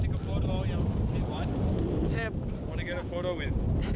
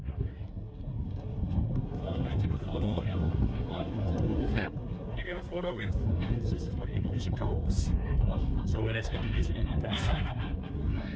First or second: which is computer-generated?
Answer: second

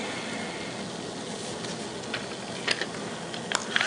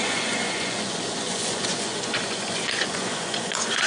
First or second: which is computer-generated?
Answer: second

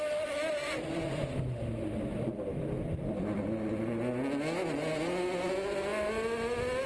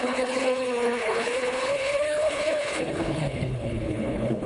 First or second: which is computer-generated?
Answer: second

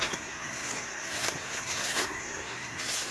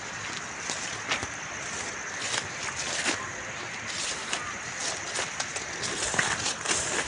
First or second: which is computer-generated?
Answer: first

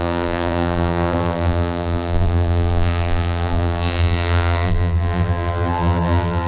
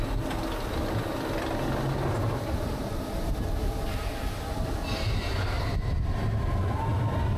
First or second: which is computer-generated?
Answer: first